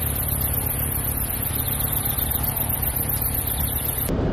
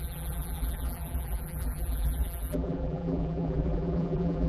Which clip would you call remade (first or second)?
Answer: second